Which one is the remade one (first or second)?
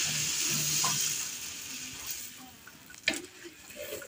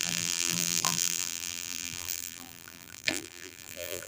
second